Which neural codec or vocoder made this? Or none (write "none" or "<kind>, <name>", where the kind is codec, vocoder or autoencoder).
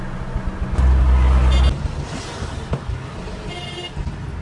none